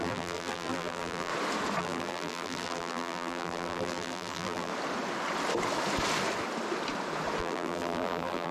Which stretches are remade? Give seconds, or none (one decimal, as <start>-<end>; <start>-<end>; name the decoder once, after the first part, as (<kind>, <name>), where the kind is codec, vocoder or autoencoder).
0.0-1.3 (vocoder, BigVGAN v2); 1.8-4.7; 7.4-8.5